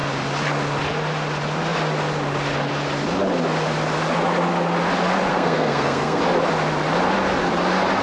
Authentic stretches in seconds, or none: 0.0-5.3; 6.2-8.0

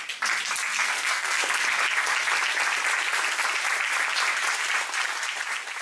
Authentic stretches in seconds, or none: 0.0-0.7; 1.5-5.8

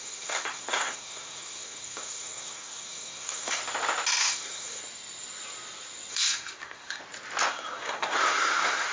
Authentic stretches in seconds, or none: 3.6-4.2; 4.8-6.1; 7.0-7.5